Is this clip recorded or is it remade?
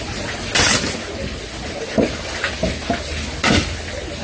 recorded